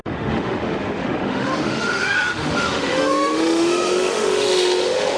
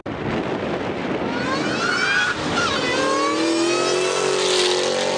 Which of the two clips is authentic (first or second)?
second